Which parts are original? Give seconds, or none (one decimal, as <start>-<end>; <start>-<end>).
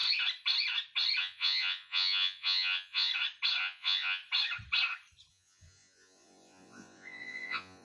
0.0-1.2; 3.1-3.6; 4.2-5.3